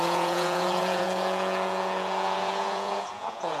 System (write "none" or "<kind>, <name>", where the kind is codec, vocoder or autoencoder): vocoder, Vocos